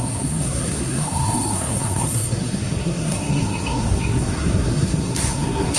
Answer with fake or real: fake